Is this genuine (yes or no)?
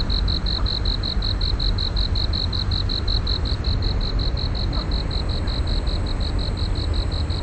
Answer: yes